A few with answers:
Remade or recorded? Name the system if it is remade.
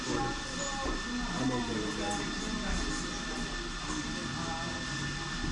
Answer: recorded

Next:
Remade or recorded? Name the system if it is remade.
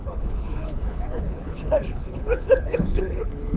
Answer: remade, codec, HILCodec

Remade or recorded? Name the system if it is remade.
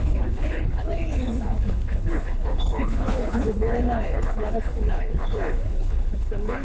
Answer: remade, codec, HILCodec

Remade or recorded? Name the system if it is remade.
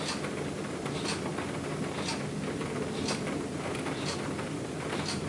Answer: recorded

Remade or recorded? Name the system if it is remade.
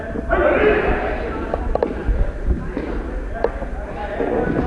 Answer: recorded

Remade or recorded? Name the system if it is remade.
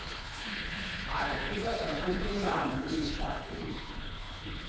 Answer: remade, codec, HILCodec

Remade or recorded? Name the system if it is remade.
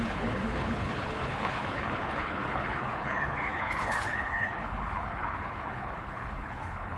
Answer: remade, codec, HILCodec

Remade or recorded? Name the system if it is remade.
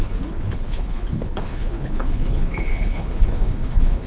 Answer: remade, codec, HILCodec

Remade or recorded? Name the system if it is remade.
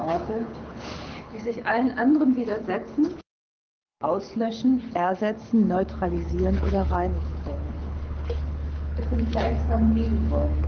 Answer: remade, codec, HILCodec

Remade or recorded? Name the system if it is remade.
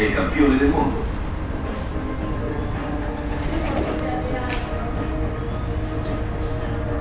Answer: recorded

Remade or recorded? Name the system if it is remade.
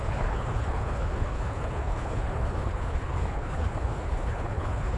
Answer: remade, codec, HILCodec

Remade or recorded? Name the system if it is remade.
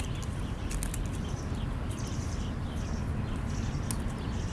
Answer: recorded